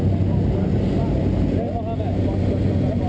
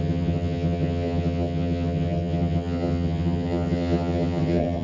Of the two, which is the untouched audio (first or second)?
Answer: first